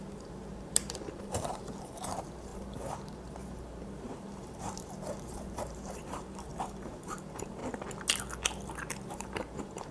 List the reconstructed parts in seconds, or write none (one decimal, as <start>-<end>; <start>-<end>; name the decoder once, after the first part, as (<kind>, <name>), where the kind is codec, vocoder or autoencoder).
0.0-7.6 (vocoder, BigVGAN v2); 9.1-9.9